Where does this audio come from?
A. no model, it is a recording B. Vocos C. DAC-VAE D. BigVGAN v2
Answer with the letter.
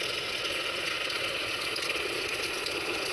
B